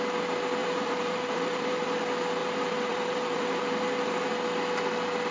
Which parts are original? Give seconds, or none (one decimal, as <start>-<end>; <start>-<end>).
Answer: 0.0-0.6; 2.0-2.4; 4.3-5.3